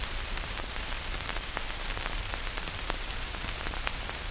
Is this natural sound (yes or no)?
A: no